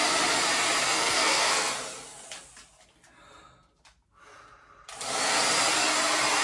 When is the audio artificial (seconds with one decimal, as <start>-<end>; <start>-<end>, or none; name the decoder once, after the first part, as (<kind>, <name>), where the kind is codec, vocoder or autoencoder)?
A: 0.8-1.7 (codec, SNAC)